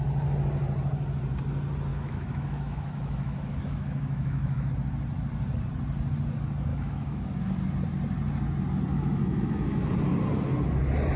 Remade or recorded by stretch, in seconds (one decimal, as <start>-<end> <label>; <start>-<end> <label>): 0.0-1.9 recorded; 1.9-4.7 remade; 4.7-6.7 recorded; 6.7-7.2 remade; 7.2-8.9 recorded; 8.9-9.9 remade; 9.9-11.2 recorded